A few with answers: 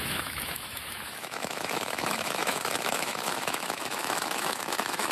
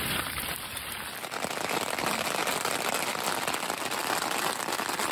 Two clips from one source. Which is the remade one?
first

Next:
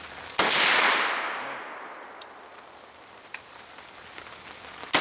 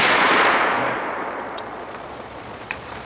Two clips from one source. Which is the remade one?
second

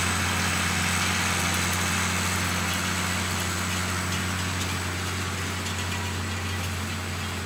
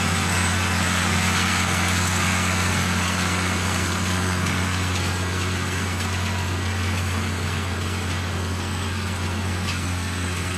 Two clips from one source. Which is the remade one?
second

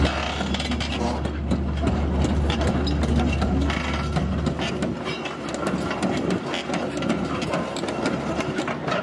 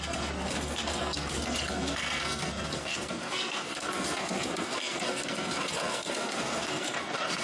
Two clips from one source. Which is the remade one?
second